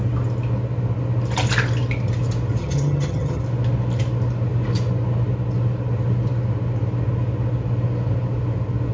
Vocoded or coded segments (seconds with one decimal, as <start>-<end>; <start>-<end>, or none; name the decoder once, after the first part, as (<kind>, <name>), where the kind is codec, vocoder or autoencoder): 2.6-3.4 (vocoder, HiFi-GAN)